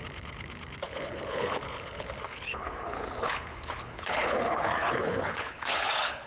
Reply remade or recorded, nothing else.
remade